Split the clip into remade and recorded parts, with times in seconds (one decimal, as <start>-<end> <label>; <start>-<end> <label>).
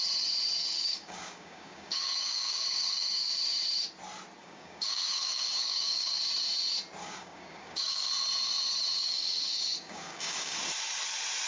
0.0-0.6 recorded; 0.6-3.4 remade; 3.4-4.4 recorded; 4.4-6.2 remade; 6.2-7.0 recorded; 7.0-8.1 remade; 8.1-9.0 recorded; 9.0-10.6 remade; 10.6-11.5 recorded